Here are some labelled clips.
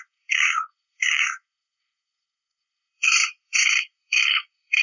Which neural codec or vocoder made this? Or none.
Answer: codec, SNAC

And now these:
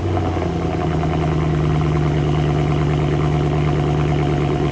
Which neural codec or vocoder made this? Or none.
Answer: none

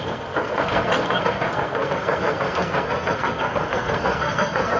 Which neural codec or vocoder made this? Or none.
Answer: codec, SNAC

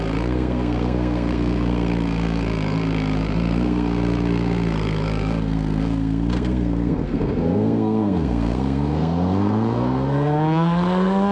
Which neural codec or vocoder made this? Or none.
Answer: codec, SNAC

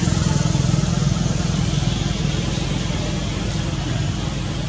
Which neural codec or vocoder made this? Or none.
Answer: none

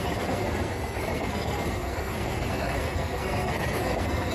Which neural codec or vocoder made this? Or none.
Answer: codec, SNAC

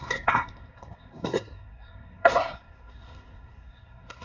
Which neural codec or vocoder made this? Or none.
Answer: codec, SNAC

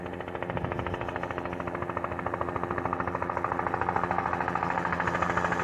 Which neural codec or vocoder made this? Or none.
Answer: none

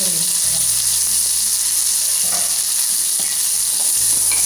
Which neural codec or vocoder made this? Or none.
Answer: none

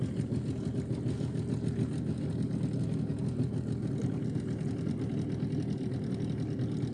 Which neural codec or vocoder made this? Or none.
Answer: none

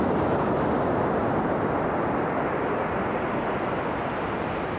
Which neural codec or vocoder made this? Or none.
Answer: none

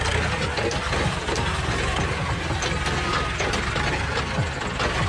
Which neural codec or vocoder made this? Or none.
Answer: none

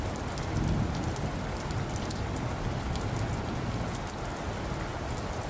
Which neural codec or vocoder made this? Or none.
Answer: none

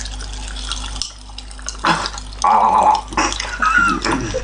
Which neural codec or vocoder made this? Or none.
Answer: none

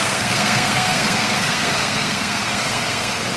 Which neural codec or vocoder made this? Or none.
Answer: codec, SNAC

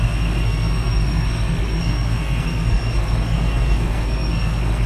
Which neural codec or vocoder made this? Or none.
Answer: codec, SNAC